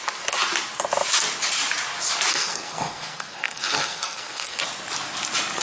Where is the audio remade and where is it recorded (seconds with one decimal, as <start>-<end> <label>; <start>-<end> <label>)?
0.0-2.3 recorded; 2.3-4.6 remade; 4.6-5.6 recorded